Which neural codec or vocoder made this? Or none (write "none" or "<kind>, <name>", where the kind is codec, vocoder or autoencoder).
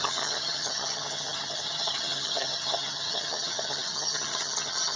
vocoder, HiFi-GAN